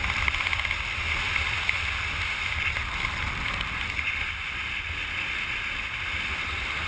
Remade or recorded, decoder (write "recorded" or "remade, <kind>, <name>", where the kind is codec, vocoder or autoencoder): recorded